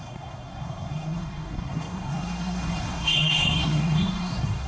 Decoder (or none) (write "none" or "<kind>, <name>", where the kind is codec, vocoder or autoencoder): codec, SNAC